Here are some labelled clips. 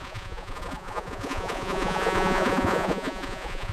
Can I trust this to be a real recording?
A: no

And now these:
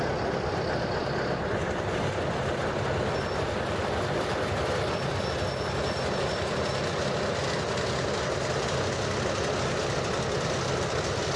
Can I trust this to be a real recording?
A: yes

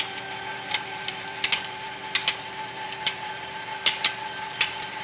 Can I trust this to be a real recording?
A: no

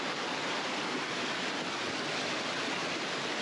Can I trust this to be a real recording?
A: yes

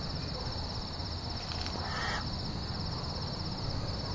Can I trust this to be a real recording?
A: yes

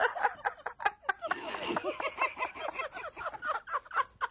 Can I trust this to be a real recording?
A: yes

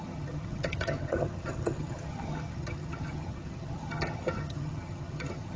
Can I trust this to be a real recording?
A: no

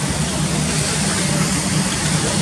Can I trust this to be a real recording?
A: yes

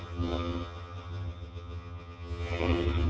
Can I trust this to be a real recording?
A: no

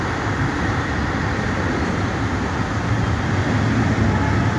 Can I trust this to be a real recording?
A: yes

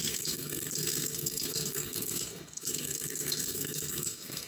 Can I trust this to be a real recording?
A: no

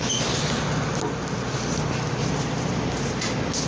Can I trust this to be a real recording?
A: yes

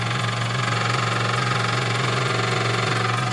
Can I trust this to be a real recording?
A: no